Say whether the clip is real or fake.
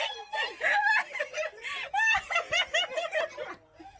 real